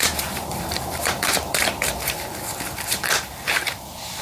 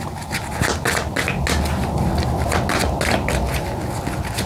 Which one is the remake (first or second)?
first